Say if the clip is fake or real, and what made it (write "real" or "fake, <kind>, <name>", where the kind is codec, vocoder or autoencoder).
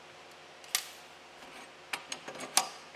real